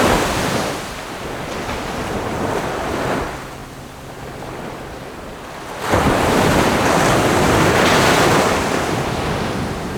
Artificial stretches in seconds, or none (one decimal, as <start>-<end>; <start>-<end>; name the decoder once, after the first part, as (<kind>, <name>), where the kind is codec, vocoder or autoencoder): none

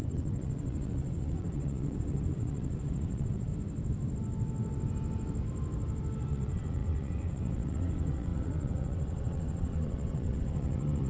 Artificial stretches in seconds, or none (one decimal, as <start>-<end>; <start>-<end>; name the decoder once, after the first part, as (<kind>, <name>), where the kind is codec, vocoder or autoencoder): 0.0-3.5 (vocoder, WaveNeXt); 6.3-11.1

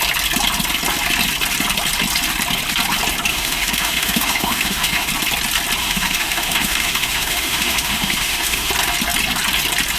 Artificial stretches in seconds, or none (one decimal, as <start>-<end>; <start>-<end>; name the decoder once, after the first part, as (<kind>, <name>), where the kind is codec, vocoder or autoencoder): 3.3-5.1 (autoencoder, DAC-VAE); 5.8-8.7

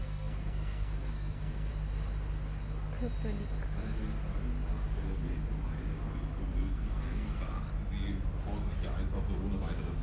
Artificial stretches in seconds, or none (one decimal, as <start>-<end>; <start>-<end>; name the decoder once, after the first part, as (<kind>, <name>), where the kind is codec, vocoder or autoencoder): 0.0-1.7 (codec, SNAC); 6.6-7.4

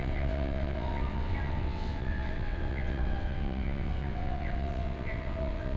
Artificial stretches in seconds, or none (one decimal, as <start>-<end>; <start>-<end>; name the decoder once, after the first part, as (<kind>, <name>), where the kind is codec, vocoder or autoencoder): 0.0-5.8 (vocoder, WaveNeXt)

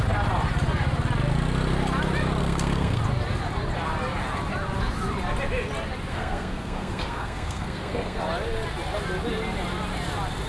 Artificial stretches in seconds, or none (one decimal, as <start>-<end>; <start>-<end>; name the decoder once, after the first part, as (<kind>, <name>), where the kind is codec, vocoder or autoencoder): 2.4-3.0 (codec, SNAC); 6.1-8.2